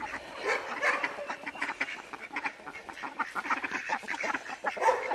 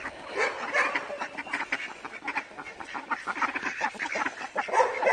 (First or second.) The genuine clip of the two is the second